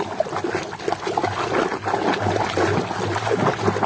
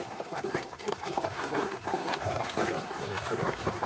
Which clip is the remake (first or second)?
second